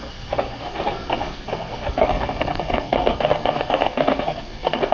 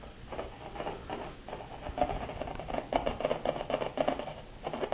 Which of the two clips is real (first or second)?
second